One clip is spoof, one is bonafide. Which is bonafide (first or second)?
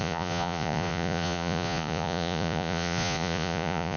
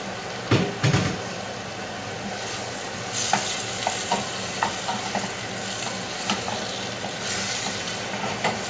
second